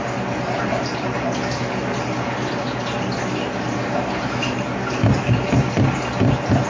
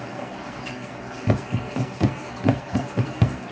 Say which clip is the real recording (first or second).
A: first